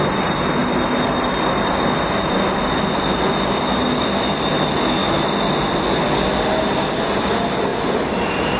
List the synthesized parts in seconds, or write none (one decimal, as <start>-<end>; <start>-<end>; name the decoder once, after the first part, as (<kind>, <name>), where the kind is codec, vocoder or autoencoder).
none